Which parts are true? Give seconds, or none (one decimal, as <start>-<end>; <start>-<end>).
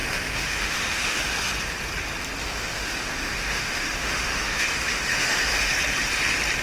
1.2-2.4; 5.7-6.6